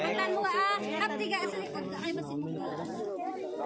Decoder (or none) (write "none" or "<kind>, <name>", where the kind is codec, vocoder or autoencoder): none